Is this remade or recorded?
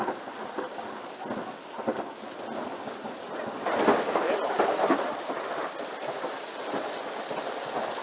recorded